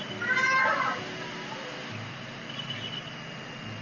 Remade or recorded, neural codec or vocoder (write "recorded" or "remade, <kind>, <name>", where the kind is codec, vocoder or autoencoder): recorded